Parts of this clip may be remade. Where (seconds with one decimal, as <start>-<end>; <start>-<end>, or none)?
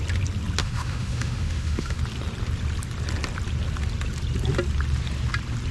0.6-2.0